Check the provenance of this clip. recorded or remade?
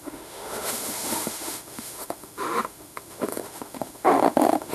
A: remade